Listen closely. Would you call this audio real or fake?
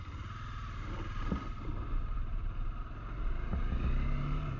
real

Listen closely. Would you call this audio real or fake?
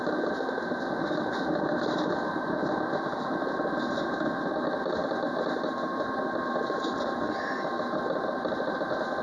real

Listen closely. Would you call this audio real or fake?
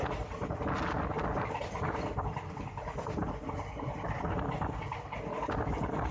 real